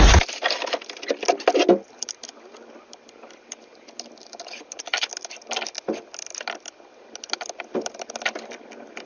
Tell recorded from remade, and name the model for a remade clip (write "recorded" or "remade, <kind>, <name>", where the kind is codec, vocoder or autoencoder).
recorded